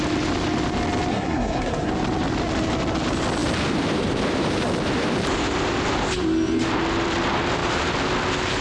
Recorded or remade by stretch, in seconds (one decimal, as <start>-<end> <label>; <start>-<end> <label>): 0.0-1.1 recorded; 1.1-1.9 remade; 1.9-8.6 recorded